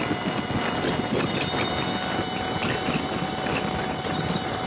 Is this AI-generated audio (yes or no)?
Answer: no